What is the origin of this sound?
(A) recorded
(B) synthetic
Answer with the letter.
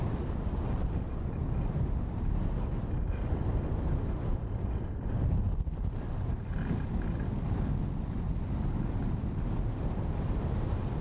A